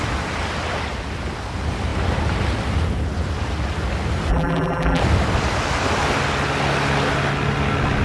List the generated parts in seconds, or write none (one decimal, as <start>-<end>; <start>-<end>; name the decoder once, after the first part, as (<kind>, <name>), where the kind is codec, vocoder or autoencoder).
4.3-5.0 (vocoder, BigVGAN v2)